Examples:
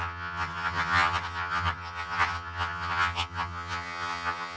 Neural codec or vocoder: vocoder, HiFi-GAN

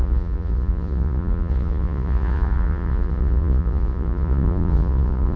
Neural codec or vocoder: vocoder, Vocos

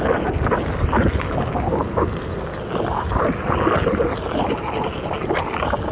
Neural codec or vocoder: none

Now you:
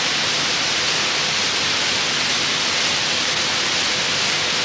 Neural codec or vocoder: none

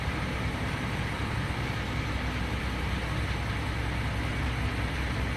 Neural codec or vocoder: none